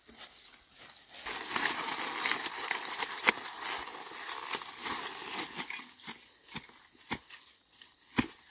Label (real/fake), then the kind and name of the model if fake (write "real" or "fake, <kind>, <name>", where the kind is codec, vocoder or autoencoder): real